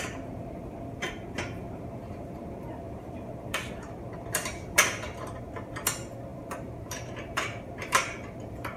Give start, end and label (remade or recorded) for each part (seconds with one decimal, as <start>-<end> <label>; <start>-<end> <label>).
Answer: 0.0-8.8 remade